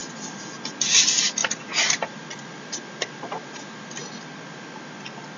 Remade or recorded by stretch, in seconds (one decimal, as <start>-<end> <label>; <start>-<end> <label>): 0.0-1.4 recorded; 1.4-4.1 remade; 4.1-5.4 recorded